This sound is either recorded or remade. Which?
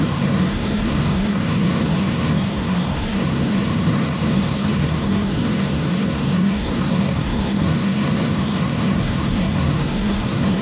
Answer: remade